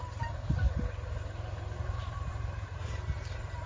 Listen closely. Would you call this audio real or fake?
fake